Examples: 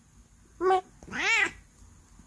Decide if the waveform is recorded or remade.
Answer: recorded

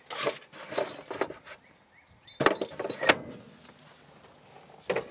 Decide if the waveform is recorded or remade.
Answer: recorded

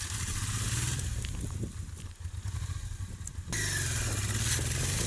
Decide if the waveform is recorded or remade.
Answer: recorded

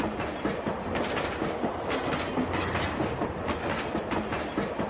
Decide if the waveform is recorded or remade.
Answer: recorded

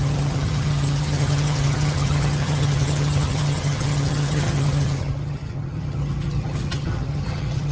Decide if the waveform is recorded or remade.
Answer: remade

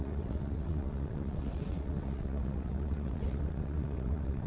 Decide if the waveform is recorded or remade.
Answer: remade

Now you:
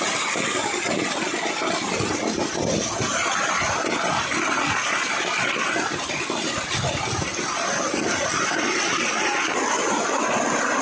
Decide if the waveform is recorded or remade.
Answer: recorded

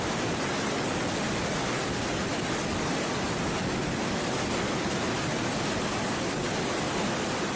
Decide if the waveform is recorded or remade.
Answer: recorded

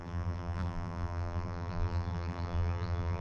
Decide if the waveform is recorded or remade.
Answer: remade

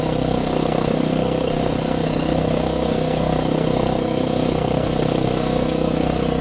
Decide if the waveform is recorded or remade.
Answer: remade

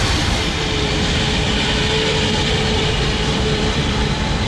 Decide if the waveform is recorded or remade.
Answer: remade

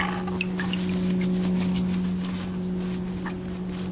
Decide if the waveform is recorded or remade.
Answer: recorded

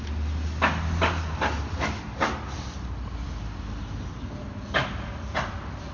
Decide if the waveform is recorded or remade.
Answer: recorded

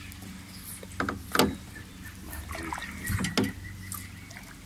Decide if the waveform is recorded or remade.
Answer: recorded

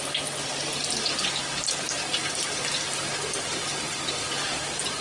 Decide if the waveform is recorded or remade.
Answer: recorded